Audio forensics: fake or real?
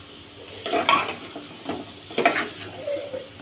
real